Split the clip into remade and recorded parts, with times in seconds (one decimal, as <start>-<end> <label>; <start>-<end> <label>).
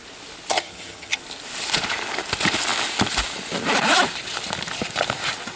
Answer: 0.0-0.5 recorded; 0.5-1.2 remade; 1.2-5.6 recorded